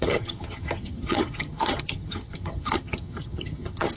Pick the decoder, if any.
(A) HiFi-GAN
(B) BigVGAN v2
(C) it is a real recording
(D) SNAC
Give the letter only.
A